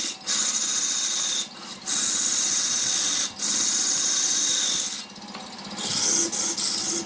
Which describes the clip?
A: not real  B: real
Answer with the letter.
B